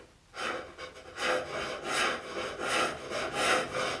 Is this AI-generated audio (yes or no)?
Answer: no